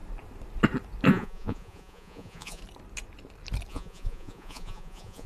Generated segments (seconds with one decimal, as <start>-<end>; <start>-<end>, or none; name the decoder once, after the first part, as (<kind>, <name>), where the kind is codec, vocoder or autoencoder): 1.1-2.6 (vocoder, Vocos); 3.7-5.3